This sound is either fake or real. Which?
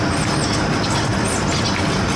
real